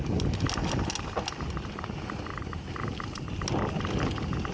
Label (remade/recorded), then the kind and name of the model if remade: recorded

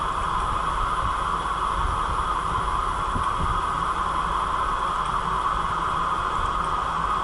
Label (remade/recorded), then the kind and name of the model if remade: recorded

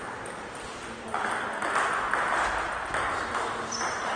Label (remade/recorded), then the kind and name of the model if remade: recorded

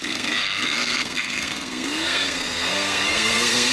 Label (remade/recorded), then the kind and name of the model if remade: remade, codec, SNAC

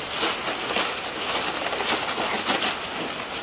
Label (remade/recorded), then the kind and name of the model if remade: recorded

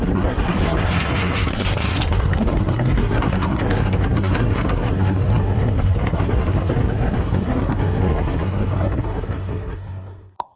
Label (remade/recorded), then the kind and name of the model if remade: remade, codec, SNAC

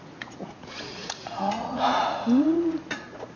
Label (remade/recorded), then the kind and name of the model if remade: remade, vocoder, Vocos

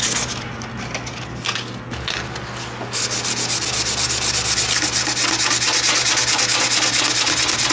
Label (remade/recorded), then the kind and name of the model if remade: recorded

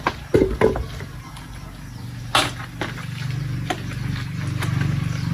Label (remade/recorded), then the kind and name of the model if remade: recorded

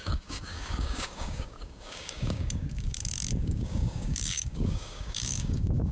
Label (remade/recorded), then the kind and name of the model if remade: remade, codec, DAC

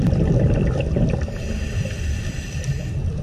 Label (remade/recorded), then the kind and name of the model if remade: recorded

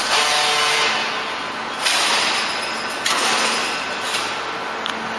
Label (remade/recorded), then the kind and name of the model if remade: recorded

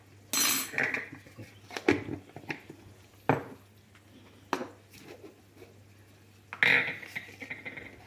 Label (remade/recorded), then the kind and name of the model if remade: recorded